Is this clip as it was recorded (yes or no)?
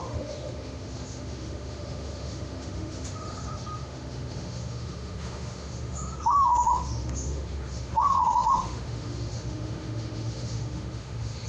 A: no